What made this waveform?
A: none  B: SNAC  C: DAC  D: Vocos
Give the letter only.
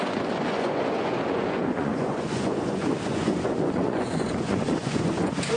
D